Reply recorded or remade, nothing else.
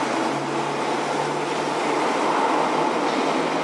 recorded